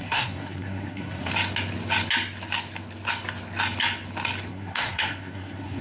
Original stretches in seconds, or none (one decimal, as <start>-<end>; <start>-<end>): 1.3-4.5